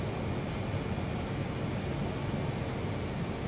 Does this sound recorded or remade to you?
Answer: recorded